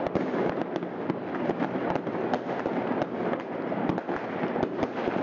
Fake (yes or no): no